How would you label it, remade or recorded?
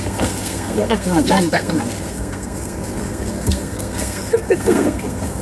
remade